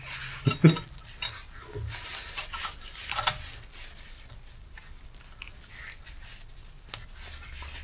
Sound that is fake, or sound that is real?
real